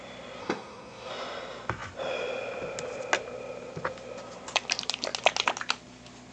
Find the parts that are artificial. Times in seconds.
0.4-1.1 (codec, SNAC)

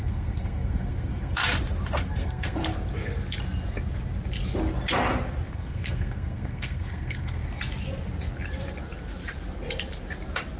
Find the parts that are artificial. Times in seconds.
0.0-1.4 (codec, SNAC); 2.1-2.6; 5.5-7.4

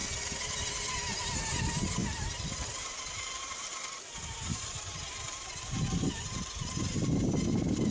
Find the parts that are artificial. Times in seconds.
0.9-3.7 (vocoder, BigVGAN v2); 4.3-7.9

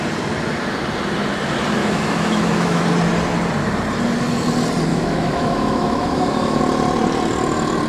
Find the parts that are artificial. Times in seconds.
1.8-2.8 (autoencoder, DAC-VAE); 4.9-6.6

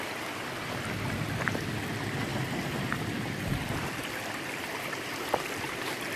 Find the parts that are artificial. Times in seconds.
2.3-6.2 (vocoder, BigVGAN v2)

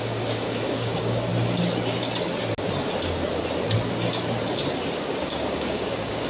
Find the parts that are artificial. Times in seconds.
0.0-1.3 (codec, DAC); 5.1-6.3